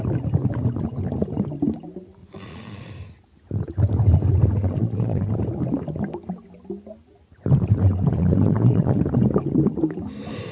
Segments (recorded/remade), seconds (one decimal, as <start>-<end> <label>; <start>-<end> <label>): 0.0-2.2 recorded; 2.2-2.9 remade; 2.9-4.6 recorded; 4.6-5.3 remade; 5.3-8.1 recorded; 8.1-9.0 remade; 9.0-10.5 recorded